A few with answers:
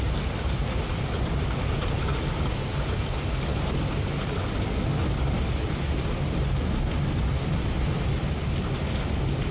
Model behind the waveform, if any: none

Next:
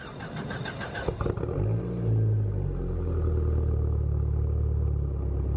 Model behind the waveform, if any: none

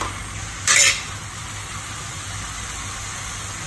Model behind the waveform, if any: none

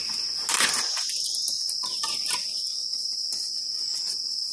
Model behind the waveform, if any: none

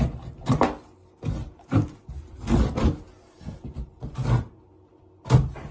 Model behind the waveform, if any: none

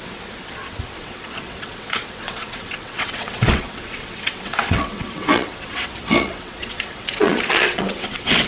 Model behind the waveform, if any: vocoder, WaveNeXt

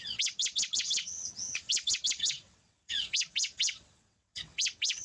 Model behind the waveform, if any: vocoder, WaveNeXt